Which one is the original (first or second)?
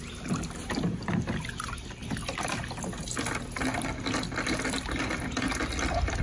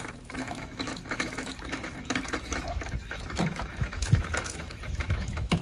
first